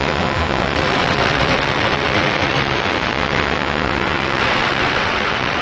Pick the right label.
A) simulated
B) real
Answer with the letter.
A